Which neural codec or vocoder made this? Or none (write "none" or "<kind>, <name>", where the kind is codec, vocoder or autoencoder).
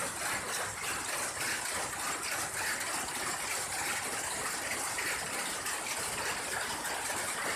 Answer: none